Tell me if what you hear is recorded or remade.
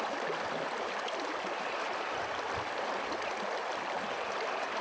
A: recorded